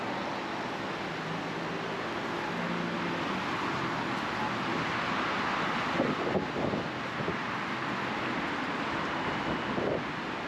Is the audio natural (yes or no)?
yes